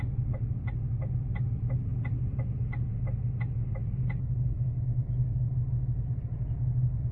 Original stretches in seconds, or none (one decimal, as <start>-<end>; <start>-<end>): 0.0-7.1